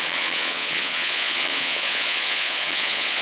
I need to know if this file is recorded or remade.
remade